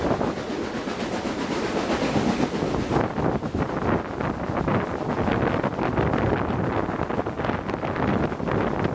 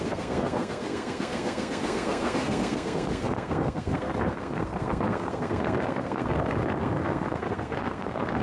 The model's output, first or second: second